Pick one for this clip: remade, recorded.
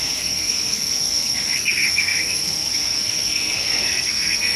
remade